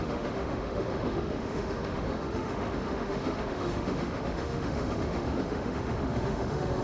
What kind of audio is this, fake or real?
fake